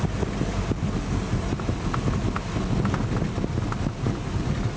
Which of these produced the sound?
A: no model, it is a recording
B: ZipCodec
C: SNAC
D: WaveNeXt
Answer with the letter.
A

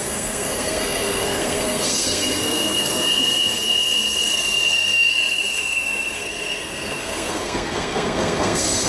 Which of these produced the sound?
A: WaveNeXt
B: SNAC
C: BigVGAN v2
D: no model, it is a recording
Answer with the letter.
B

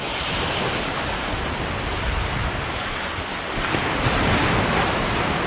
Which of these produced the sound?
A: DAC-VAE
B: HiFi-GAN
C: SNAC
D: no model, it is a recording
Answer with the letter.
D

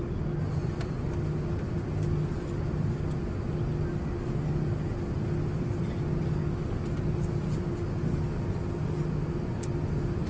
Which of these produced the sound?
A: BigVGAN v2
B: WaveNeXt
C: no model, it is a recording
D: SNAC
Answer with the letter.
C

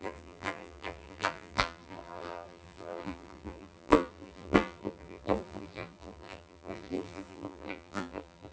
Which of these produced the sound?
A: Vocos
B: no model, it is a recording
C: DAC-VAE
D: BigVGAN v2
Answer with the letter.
D